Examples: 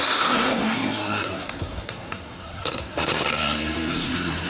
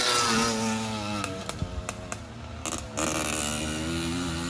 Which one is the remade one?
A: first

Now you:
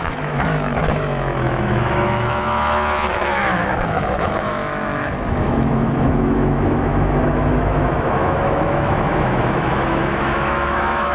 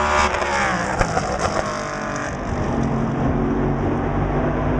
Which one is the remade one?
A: first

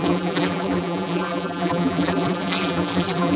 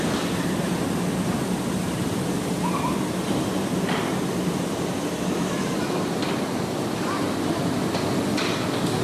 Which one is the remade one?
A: first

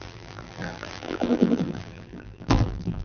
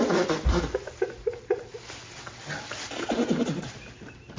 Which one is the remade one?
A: first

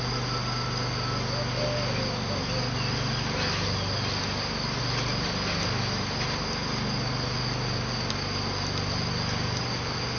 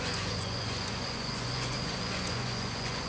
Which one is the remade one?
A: second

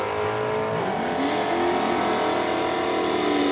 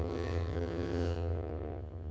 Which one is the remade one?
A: second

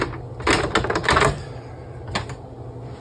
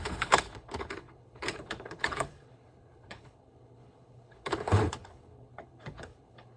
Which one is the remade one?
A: second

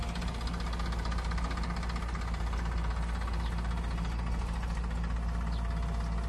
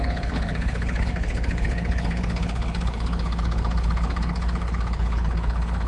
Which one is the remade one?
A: second